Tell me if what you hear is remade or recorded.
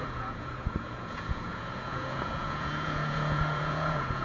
remade